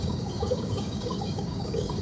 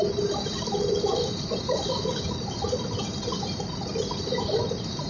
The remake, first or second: first